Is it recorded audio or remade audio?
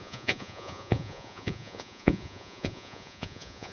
remade